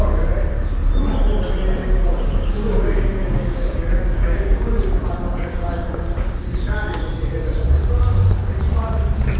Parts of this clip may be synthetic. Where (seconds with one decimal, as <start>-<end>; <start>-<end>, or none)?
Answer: 1.8-4.8; 5.5-7.1